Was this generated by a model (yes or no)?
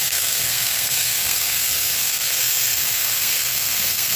yes